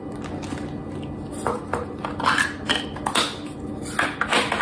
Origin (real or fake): real